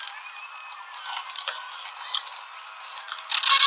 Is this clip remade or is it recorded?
recorded